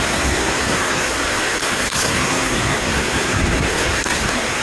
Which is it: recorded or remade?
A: remade